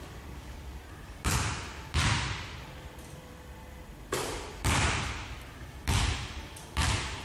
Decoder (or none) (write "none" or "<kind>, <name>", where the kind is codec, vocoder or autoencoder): vocoder, BigVGAN v2